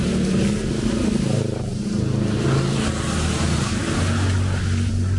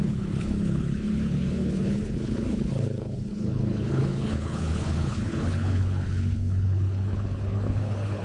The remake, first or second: second